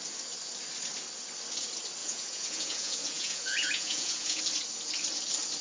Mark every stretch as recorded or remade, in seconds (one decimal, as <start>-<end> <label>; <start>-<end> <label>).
0.0-2.0 recorded; 2.0-4.4 remade; 4.4-5.6 recorded